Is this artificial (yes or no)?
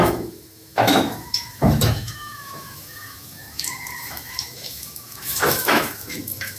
yes